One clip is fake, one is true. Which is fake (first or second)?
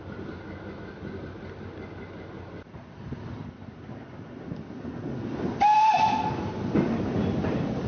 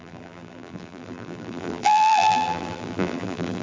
second